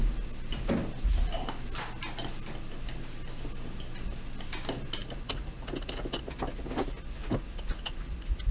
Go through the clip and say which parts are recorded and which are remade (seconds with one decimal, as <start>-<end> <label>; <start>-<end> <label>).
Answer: 0.0-8.5 recorded